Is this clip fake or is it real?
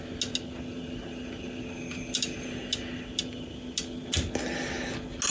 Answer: real